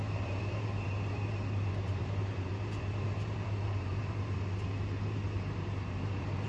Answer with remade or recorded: remade